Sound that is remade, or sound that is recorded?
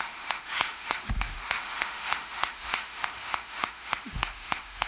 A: remade